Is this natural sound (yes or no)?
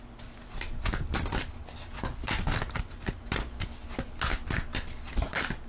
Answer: yes